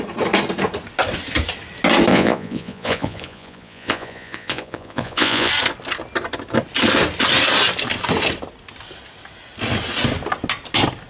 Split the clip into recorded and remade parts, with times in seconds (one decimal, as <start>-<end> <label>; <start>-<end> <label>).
0.0-2.1 recorded; 2.1-5.5 remade; 5.5-11.1 recorded